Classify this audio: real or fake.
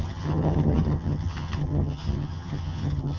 fake